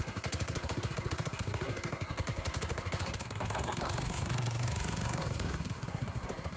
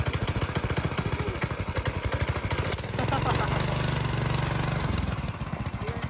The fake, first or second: first